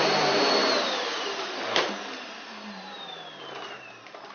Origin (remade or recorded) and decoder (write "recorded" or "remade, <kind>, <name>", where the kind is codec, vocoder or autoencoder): remade, vocoder, BigVGAN v2